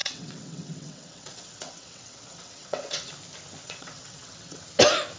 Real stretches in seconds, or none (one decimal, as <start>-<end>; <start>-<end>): 3.1-3.6; 4.6-5.2